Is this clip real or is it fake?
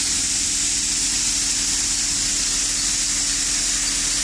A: real